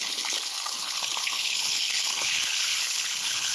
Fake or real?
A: fake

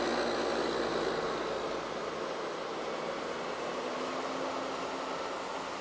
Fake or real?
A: real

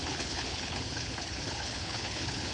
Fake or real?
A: fake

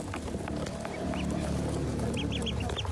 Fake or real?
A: real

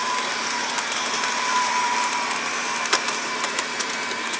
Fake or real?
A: fake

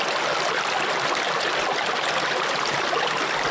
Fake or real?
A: real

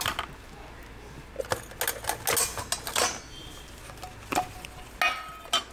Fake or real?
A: real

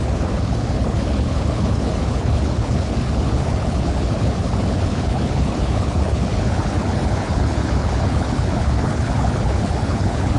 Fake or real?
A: fake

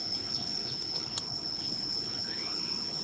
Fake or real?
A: fake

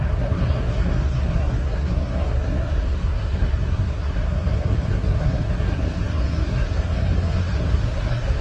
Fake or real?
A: fake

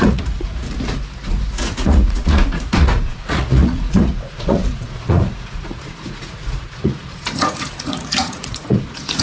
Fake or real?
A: fake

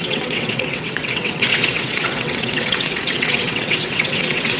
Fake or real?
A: fake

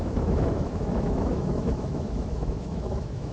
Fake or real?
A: fake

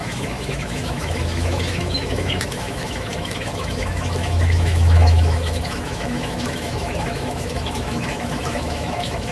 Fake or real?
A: fake